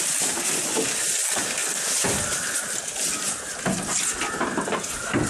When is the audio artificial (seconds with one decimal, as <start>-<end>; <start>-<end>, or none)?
none